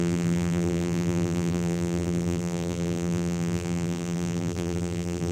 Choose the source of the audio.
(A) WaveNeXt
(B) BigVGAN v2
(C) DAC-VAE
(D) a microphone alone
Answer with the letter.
B